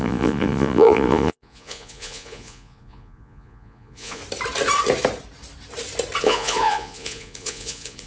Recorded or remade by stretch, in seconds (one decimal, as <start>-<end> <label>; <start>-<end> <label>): 0.0-4.2 remade; 4.2-6.2 recorded; 6.2-8.1 remade